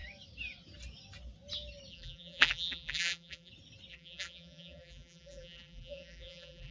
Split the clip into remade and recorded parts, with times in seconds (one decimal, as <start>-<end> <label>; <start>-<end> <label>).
0.0-1.9 recorded; 1.9-3.5 remade; 3.5-3.9 recorded; 3.9-6.7 remade